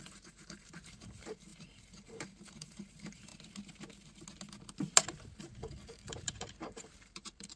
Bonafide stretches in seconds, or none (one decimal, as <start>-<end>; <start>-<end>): 3.3-5.4